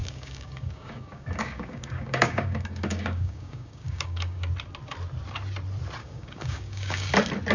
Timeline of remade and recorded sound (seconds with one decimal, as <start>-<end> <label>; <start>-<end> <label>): 0.0-4.5 remade; 4.5-6.0 recorded; 6.0-7.1 remade; 7.1-7.5 recorded